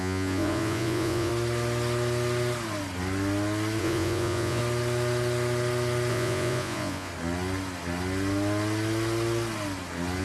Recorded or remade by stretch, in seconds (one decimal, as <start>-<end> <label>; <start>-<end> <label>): 0.0-1.3 remade; 1.3-3.8 recorded; 3.8-4.6 remade; 4.6-6.1 recorded; 6.1-7.1 remade; 7.1-10.2 recorded